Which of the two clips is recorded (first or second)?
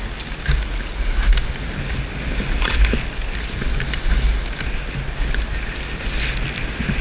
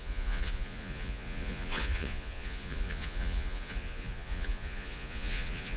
first